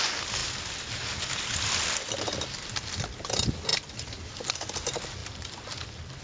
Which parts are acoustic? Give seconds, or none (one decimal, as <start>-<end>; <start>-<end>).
0.0-0.4; 0.9-5.2